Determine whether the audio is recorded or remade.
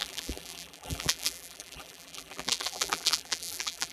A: remade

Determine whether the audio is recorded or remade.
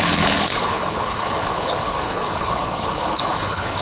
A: remade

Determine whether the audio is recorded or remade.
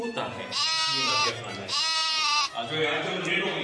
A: recorded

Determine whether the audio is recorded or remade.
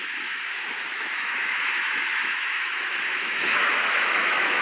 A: remade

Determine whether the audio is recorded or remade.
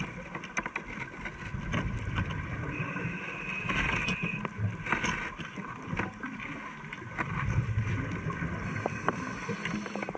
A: recorded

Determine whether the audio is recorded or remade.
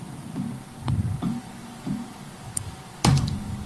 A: remade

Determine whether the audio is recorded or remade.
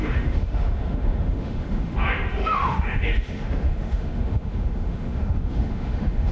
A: remade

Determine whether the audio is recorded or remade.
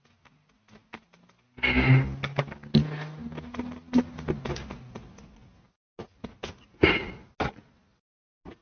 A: recorded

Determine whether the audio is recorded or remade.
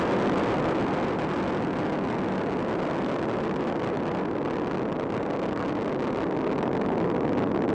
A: recorded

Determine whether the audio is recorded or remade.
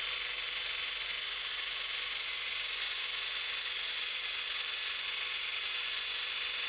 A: recorded